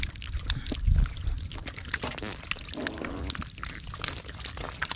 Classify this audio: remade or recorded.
recorded